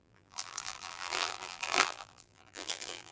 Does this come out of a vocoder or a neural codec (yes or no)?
yes